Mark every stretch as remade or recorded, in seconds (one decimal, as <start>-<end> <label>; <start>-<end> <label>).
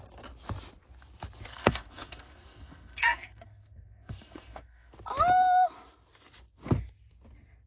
0.0-1.5 recorded; 1.5-4.9 remade; 4.9-7.7 recorded